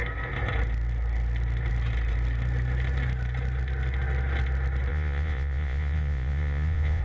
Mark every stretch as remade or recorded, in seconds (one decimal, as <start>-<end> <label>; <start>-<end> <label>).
0.0-4.9 recorded; 4.9-7.0 remade